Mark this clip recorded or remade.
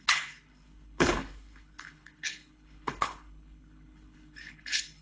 remade